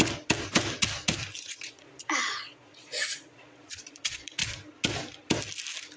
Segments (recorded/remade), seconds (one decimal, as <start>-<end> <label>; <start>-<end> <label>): 0.0-1.4 recorded; 1.4-4.4 remade; 4.4-6.0 recorded

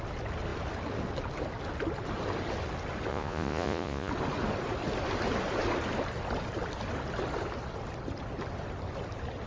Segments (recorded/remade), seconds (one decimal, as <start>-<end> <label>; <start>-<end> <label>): 0.0-3.1 recorded; 3.1-4.1 remade; 4.1-9.5 recorded

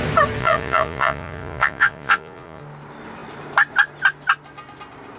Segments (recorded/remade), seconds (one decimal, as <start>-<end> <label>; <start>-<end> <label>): 0.0-0.4 recorded; 0.4-2.6 remade; 2.6-5.2 recorded